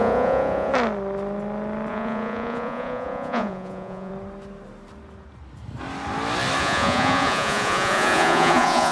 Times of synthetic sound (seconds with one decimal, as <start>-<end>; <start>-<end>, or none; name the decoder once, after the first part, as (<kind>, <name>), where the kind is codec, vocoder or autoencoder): 0.0-0.7 (vocoder, Vocos); 1.9-4.1; 6.6-8.9